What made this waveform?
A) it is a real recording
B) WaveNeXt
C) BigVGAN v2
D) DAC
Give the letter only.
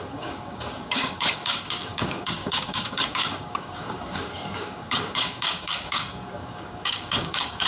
D